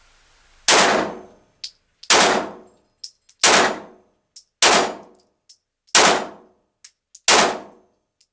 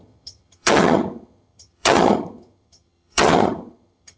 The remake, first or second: second